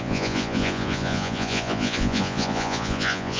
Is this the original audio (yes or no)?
no